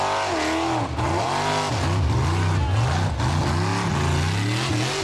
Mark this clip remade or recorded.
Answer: recorded